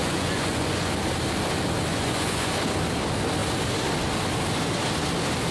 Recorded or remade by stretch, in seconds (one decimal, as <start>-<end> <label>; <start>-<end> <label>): 0.0-0.9 remade; 0.9-1.9 recorded; 1.9-2.5 remade; 2.5-5.5 recorded